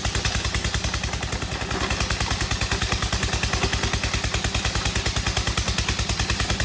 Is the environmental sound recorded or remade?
recorded